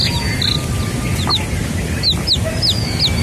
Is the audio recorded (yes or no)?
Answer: yes